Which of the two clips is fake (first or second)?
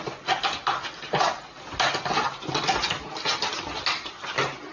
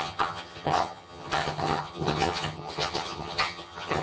second